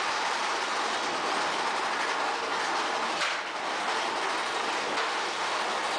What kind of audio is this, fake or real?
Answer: real